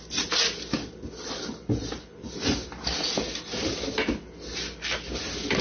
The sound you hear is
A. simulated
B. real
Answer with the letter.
B